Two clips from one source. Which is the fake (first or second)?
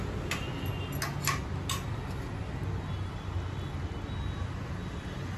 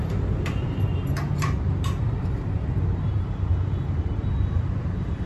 second